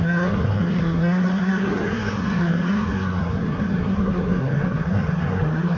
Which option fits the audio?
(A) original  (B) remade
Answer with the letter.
B